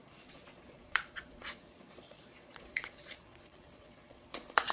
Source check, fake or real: fake